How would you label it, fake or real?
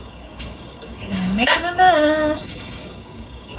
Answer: fake